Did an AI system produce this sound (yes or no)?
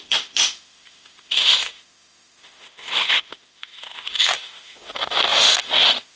yes